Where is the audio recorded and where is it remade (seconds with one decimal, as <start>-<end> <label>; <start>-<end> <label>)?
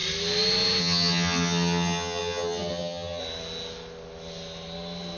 0.0-0.8 recorded; 0.8-3.2 remade; 3.2-5.2 recorded